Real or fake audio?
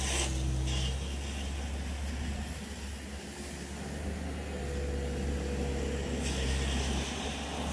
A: real